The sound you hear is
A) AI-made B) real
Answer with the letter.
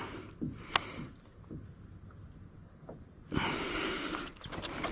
B